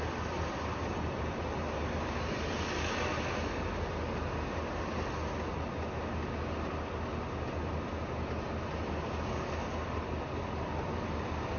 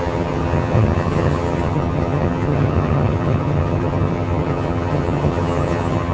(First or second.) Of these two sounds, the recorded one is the first